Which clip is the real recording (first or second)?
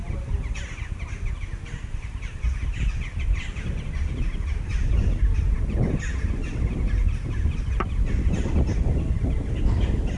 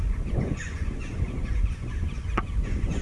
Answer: first